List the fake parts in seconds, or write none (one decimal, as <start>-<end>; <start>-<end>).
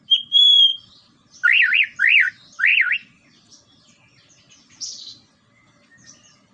0.7-2.3; 2.7-5.0